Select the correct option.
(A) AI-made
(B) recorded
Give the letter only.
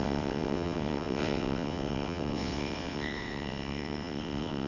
A